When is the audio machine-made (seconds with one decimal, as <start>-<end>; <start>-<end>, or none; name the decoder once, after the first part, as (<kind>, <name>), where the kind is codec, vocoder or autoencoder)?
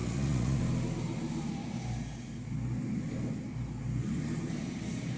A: 0.0-0.6 (vocoder, Vocos)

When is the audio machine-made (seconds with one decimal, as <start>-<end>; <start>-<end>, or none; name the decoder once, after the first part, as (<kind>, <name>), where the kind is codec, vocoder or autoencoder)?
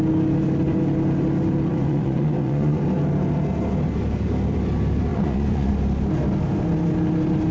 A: 1.7-2.8 (vocoder, Vocos); 5.1-5.7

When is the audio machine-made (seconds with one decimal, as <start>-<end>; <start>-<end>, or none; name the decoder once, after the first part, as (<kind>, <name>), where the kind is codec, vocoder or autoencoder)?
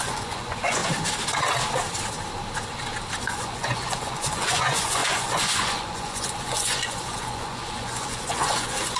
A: 0.0-0.8 (vocoder, Vocos); 3.2-9.0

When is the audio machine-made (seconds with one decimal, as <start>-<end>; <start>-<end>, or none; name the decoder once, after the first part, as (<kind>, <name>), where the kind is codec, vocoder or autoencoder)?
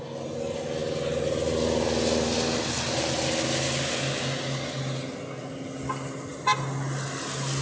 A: none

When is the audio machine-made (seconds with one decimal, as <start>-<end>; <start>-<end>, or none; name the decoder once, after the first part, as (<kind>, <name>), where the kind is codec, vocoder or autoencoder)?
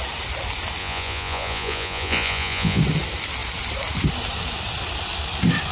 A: 0.8-2.8 (vocoder, Vocos)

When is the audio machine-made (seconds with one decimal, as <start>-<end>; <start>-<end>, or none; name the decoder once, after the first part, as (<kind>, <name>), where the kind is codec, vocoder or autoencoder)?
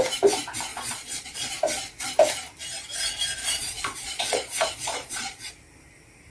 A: 0.7-1.5 (vocoder, Vocos); 3.4-5.5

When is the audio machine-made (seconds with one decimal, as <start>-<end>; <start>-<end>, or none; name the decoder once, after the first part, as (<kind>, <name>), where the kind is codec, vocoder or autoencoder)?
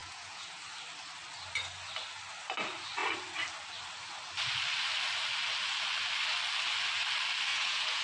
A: 0.0-0.6 (vocoder, Vocos); 7.5-8.0